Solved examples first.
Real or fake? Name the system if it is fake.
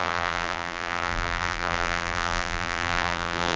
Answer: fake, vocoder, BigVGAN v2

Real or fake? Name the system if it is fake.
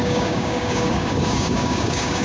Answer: fake, codec, DAC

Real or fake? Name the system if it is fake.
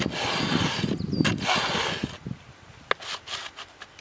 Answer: real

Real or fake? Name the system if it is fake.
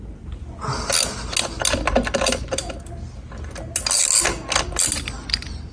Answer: real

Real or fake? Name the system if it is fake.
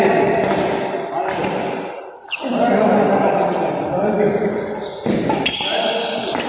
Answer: real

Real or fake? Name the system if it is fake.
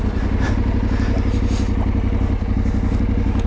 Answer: real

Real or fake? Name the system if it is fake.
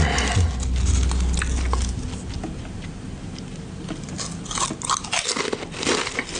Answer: real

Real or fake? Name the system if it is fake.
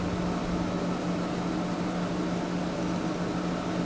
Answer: real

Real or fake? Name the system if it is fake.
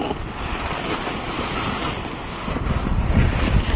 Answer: real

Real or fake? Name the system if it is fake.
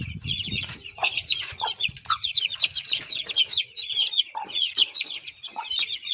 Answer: fake, vocoder, Vocos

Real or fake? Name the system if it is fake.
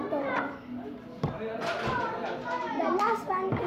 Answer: fake, vocoder, BigVGAN v2